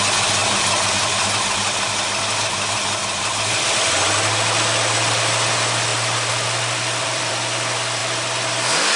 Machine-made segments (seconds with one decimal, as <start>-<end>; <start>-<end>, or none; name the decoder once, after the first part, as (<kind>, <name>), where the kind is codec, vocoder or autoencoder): 5.9-7.3 (vocoder, BigVGAN v2)

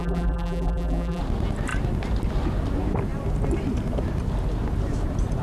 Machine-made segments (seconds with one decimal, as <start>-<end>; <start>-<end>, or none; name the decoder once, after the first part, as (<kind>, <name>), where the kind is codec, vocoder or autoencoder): 0.0-1.2 (vocoder, BigVGAN v2)

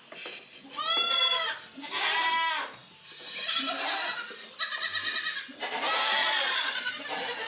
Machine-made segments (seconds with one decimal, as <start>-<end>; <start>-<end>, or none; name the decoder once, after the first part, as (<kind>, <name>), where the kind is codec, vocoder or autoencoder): 6.2-6.9 (vocoder, Vocos)

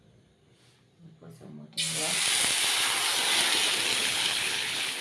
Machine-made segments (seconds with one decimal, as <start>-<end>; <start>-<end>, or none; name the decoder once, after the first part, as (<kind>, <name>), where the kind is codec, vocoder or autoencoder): 4.0-5.0 (codec, HILCodec)

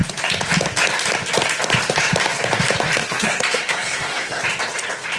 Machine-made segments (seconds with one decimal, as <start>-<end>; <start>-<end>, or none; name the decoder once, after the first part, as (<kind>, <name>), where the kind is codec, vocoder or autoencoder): 3.0-4.4 (codec, SNAC)

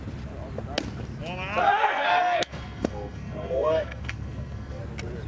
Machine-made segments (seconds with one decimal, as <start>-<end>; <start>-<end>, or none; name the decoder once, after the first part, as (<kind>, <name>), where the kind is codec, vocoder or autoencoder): 1.6-4.8 (codec, SNAC)

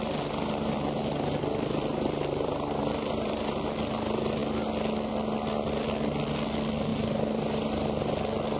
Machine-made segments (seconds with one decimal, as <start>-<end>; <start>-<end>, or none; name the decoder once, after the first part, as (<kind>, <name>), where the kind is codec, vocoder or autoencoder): 1.9-3.4 (vocoder, BigVGAN v2)